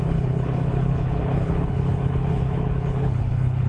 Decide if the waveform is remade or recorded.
remade